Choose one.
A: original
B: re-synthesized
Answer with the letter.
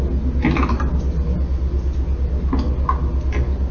A